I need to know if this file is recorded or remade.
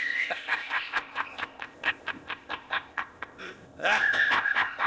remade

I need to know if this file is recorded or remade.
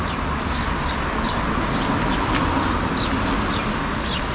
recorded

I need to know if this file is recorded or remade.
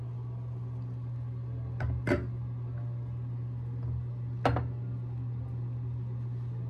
recorded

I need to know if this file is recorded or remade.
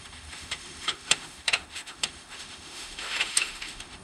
remade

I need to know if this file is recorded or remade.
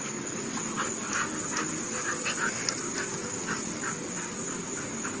recorded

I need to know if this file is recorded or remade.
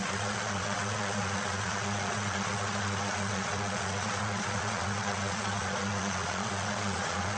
remade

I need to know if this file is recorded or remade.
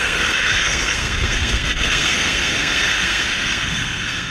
remade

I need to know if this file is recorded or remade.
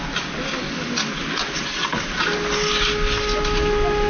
recorded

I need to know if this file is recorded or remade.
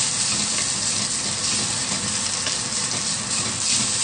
recorded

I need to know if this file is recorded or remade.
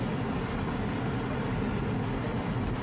recorded